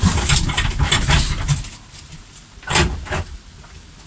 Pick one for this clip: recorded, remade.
recorded